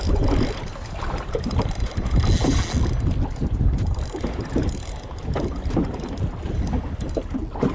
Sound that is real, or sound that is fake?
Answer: real